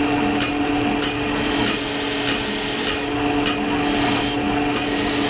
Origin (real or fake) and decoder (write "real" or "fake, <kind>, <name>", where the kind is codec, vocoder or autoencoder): real